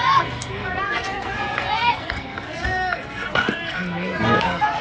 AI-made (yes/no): yes